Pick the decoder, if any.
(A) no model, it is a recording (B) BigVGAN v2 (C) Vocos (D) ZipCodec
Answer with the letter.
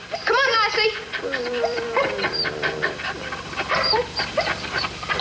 B